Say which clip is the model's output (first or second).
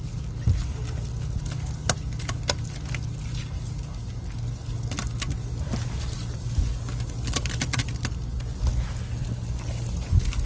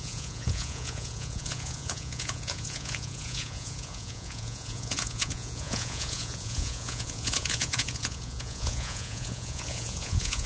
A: second